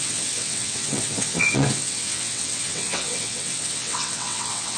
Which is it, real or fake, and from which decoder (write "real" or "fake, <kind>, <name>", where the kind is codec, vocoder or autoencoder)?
fake, vocoder, WaveNeXt